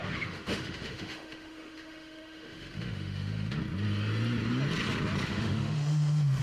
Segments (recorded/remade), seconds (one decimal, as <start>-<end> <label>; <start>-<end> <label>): 0.0-3.6 remade; 3.6-5.3 recorded; 5.3-6.4 remade